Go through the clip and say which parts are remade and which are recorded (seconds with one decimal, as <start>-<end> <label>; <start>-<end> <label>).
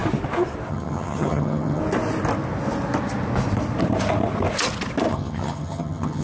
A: 0.0-0.7 recorded; 0.7-1.8 remade; 1.8-5.1 recorded; 5.1-6.2 remade